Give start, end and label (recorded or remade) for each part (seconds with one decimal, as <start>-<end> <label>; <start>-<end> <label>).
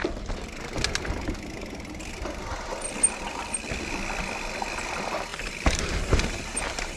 0.0-5.3 recorded; 5.3-7.0 remade